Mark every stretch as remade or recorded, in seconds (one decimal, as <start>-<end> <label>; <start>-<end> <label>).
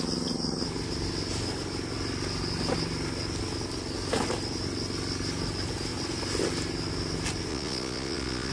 0.0-7.5 recorded; 7.5-8.5 remade